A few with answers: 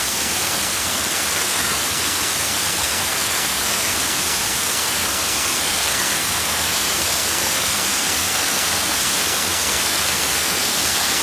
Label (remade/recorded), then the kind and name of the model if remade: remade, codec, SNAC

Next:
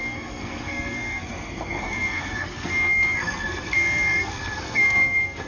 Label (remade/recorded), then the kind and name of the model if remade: remade, codec, SNAC